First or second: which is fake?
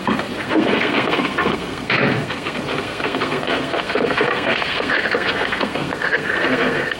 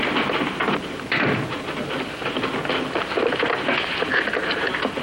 first